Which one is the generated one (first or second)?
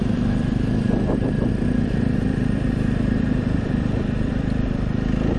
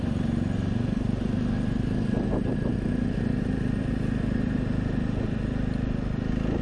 first